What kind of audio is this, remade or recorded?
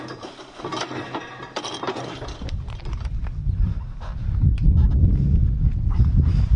recorded